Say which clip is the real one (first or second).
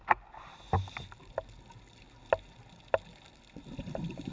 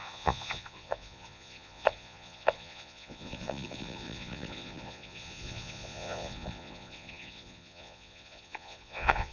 first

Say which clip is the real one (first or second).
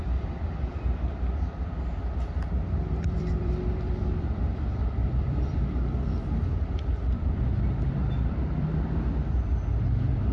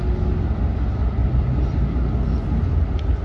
second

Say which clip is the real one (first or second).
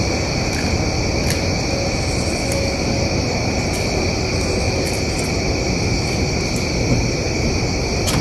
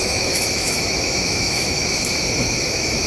first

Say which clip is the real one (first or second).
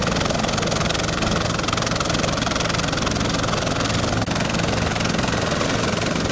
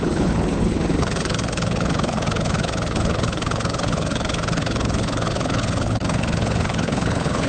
first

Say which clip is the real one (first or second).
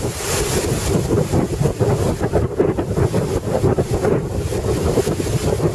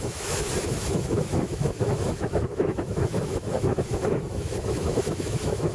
first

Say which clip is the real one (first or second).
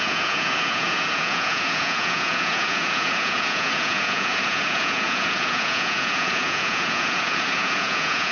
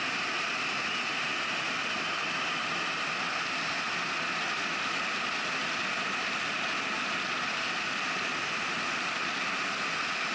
second